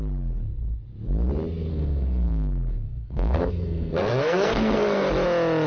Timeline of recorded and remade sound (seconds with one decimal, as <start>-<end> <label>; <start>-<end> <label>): 0.0-1.7 recorded; 1.7-5.1 remade; 5.1-5.7 recorded